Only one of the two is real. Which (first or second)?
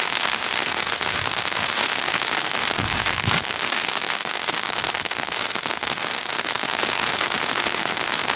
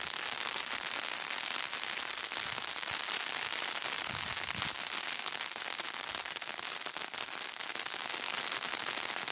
second